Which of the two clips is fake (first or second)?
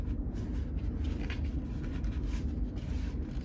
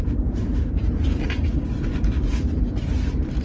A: second